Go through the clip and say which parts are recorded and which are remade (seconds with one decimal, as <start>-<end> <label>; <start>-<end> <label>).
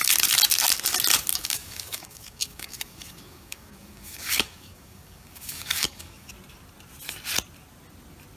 0.0-1.3 recorded; 1.3-6.3 remade; 6.3-8.4 recorded